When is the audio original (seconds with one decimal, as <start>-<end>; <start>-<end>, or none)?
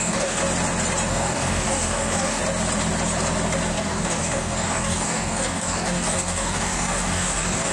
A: 0.4-1.1; 2.4-3.7